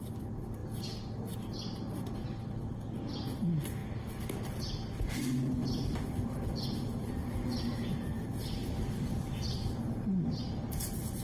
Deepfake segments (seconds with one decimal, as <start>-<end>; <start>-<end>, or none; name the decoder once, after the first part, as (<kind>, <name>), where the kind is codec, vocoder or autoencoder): none